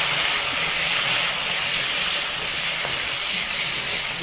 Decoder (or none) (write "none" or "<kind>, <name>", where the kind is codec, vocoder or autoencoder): none